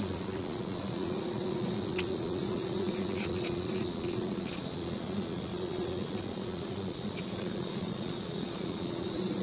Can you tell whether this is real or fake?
fake